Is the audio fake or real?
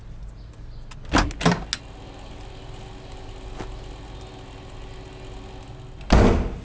real